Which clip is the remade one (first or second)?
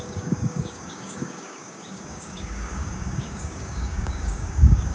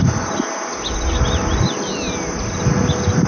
first